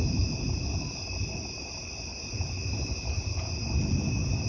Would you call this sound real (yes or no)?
yes